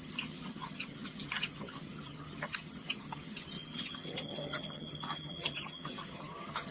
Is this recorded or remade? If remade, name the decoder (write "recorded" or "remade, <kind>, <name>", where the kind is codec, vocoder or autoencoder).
remade, vocoder, HiFi-GAN